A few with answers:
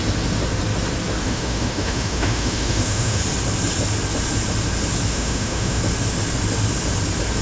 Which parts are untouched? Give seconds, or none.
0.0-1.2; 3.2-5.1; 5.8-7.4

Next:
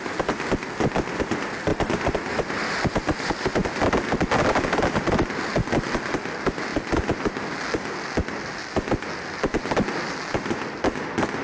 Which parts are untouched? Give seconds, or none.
0.0-11.4

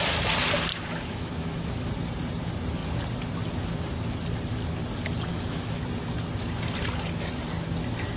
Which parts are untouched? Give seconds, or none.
0.0-0.7; 1.9-5.3; 5.8-8.2

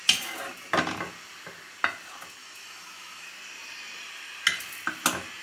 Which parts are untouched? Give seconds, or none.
0.0-2.4; 3.3-5.4

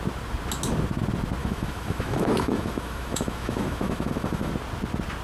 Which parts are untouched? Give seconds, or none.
0.0-1.4; 4.5-5.2